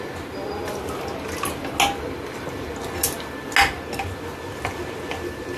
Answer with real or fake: real